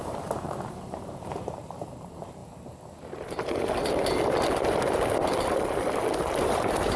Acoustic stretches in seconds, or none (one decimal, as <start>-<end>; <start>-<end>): 2.4-6.4